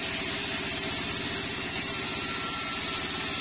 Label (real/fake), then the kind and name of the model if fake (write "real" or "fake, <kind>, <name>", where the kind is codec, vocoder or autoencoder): real